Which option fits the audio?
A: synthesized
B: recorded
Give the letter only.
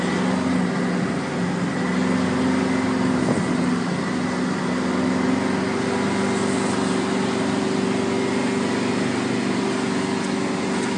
B